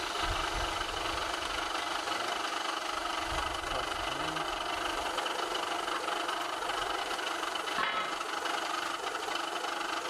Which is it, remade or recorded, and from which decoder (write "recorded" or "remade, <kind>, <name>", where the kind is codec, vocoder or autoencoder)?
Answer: recorded